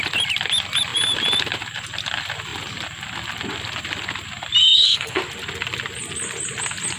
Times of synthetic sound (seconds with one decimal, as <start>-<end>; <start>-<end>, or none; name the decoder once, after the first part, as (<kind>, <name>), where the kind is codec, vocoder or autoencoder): 4.6-5.2 (codec, SNAC)